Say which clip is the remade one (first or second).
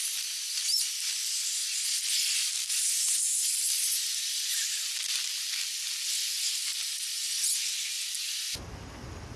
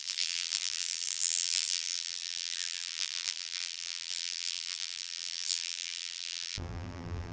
second